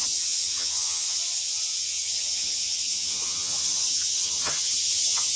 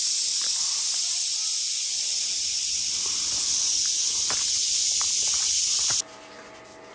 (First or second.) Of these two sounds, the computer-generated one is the first